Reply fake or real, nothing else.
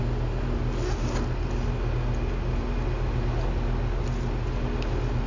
real